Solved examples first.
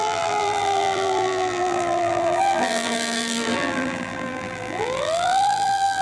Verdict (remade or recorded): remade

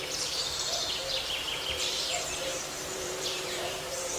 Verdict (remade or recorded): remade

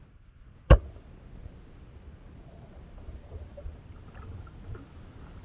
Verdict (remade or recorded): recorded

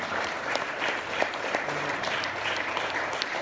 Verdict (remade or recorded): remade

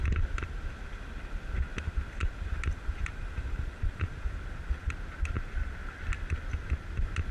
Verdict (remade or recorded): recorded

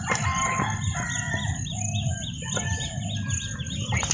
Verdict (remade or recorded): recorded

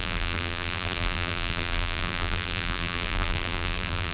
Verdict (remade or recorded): remade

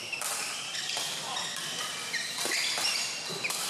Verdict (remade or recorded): remade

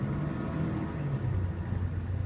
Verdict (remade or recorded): recorded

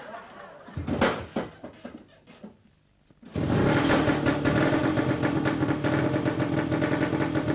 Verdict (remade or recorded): recorded